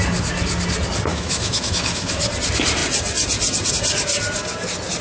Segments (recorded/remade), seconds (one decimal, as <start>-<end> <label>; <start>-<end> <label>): 0.0-1.1 recorded; 1.1-2.2 remade; 2.2-5.0 recorded